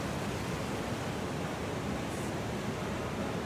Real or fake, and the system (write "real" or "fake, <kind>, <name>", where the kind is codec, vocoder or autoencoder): real